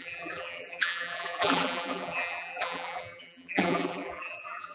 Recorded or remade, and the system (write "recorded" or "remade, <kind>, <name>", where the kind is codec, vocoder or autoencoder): remade, vocoder, BigVGAN v2